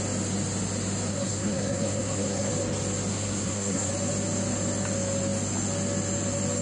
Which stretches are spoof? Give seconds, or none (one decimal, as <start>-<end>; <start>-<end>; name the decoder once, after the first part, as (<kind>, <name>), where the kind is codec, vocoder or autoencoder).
1.1-2.5 (codec, SNAC); 3.1-3.9